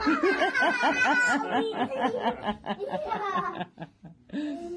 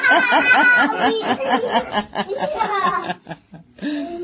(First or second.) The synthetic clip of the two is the second